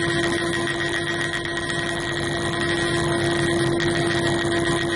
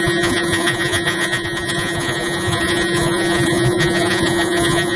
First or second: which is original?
first